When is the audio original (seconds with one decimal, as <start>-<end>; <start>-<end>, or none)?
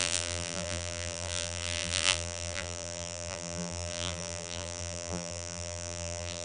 none